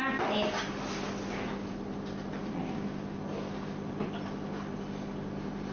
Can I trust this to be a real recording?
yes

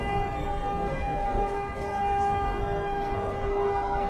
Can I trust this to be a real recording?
no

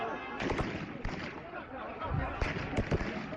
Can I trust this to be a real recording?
yes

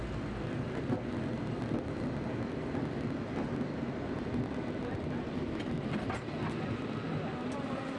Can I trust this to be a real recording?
yes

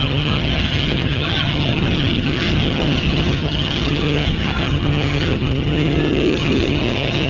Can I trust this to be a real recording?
no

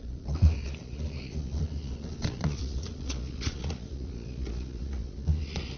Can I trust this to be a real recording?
no